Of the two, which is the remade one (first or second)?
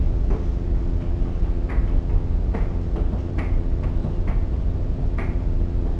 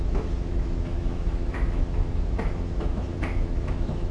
second